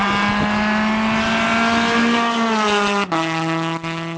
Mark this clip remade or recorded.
recorded